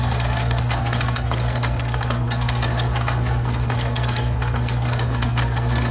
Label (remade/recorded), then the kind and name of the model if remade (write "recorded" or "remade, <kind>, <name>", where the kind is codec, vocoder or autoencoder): remade, codec, SNAC